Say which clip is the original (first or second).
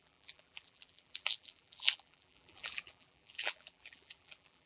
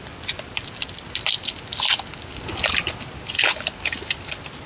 second